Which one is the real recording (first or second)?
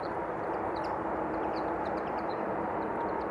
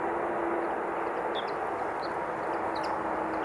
second